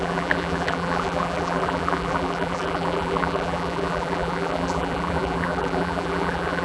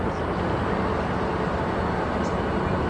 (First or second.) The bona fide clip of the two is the second